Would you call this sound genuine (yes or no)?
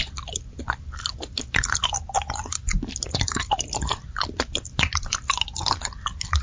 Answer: yes